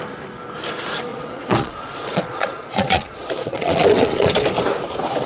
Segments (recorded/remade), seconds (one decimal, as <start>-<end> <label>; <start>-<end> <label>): 0.0-1.1 recorded; 1.1-4.3 remade; 4.3-5.3 recorded